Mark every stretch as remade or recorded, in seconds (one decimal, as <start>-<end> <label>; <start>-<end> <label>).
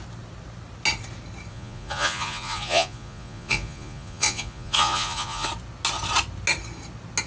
0.0-1.5 recorded; 1.5-5.5 remade; 5.5-7.3 recorded